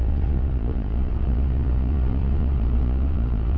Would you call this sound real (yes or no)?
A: no